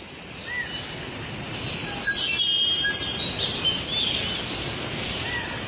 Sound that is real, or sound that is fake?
real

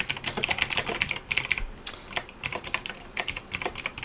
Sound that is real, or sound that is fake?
fake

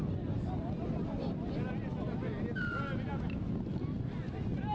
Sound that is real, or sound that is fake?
real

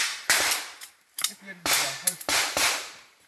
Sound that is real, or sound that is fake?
fake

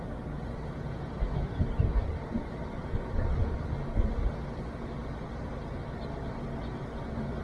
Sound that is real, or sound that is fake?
real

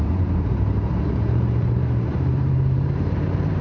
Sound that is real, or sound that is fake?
fake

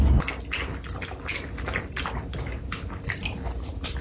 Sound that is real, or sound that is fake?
real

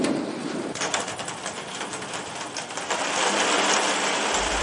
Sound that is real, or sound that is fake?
fake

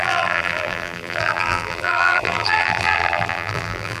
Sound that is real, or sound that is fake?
fake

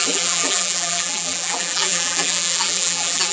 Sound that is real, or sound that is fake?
fake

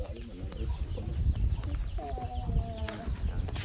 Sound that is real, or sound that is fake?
real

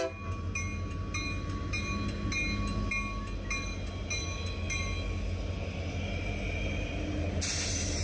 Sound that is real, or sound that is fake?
real